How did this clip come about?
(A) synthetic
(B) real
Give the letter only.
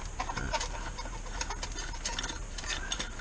B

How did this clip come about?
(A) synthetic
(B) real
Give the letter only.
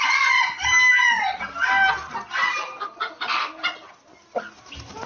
B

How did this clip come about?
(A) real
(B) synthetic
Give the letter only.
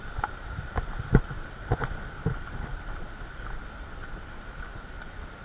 A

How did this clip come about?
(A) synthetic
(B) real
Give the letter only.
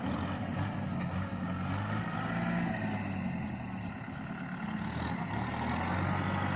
B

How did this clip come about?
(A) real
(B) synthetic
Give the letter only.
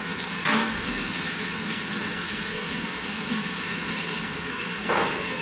B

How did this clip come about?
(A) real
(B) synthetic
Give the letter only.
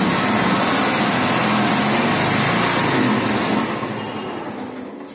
A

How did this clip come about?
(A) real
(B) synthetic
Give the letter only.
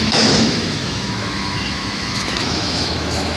B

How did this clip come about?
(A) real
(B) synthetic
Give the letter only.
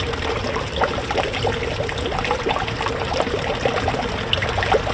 A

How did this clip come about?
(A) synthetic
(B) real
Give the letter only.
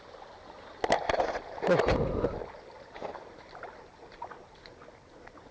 B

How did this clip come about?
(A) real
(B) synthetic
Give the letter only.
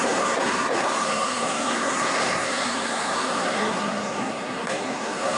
B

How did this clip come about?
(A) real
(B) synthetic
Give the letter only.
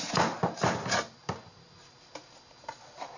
A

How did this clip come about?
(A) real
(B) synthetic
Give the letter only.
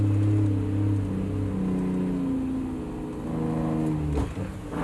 A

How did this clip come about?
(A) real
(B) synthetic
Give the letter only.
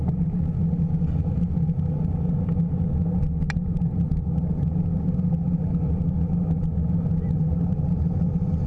A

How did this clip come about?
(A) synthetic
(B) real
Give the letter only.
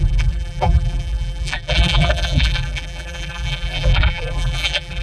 A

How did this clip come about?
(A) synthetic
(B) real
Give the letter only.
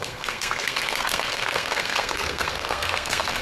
A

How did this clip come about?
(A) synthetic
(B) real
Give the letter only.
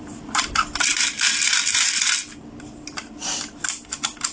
B